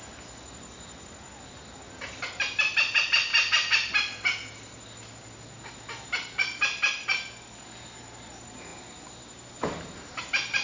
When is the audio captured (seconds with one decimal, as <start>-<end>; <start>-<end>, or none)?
0.0-10.6